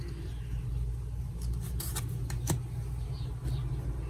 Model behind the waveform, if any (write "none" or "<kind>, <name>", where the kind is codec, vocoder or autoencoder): none